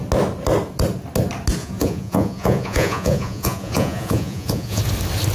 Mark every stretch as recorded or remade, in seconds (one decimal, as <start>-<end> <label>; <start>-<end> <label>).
0.0-1.6 recorded; 1.6-4.8 remade; 4.8-5.3 recorded